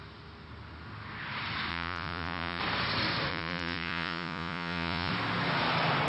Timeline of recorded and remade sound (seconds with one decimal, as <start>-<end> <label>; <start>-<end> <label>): 0.0-1.7 recorded; 1.7-2.6 remade; 2.6-3.3 recorded; 3.3-5.1 remade; 5.1-6.1 recorded